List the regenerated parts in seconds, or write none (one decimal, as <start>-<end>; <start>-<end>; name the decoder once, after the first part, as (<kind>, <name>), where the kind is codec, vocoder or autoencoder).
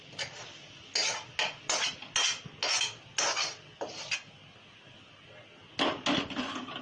none